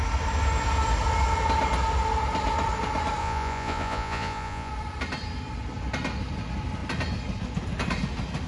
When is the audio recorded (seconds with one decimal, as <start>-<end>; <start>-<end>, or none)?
0.0-3.2; 4.7-8.5